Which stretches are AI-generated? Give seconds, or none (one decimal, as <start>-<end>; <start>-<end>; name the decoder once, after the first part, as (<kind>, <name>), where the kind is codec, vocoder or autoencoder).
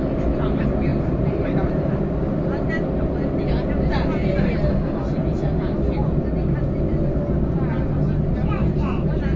0.9-1.9 (vocoder, BigVGAN v2)